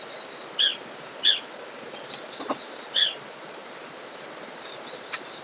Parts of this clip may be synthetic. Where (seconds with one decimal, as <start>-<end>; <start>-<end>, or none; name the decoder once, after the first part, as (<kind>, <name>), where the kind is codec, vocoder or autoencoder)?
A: none